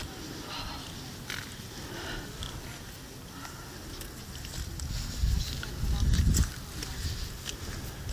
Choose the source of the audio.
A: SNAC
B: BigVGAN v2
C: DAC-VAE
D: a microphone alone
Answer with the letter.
D